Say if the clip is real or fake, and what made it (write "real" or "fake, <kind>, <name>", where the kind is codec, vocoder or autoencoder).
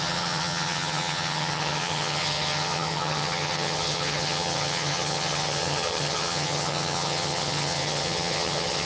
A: fake, vocoder, HiFi-GAN